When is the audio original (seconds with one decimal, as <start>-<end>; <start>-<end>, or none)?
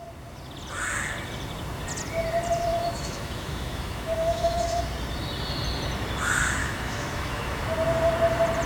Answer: 0.0-2.7; 4.8-6.6; 7.6-8.7